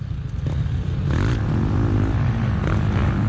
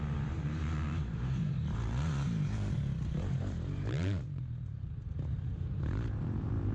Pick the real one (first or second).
first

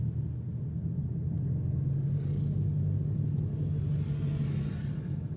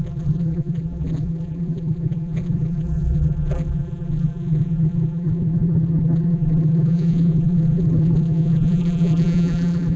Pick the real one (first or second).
first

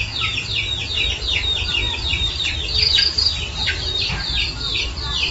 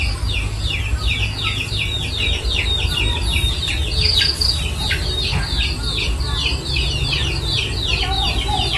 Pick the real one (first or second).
second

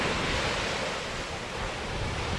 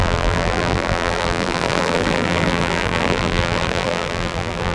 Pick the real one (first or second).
first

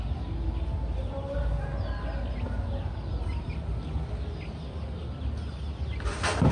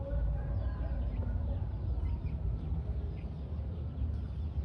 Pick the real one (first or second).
first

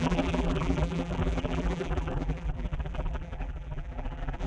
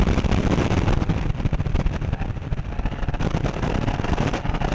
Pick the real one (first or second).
second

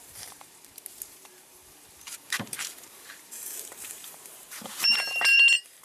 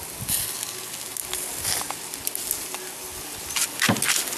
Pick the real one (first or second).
second